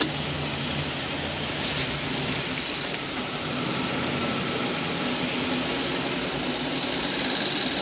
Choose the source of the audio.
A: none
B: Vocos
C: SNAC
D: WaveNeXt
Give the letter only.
A